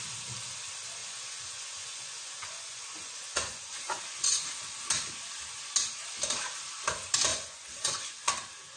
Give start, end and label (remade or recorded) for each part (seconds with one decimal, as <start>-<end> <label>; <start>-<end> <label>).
0.0-1.0 recorded; 1.0-4.0 remade; 4.0-7.3 recorded; 7.3-8.3 remade; 8.3-8.8 recorded